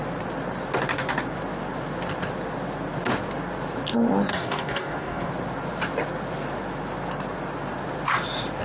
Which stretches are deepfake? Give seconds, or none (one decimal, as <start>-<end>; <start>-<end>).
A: 4.3-5.3